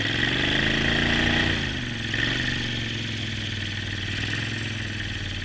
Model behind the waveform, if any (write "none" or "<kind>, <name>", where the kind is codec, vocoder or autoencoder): none